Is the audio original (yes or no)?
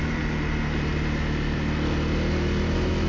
yes